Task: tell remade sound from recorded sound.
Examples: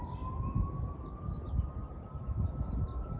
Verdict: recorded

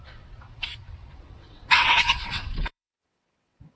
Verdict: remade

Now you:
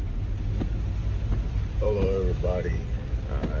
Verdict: recorded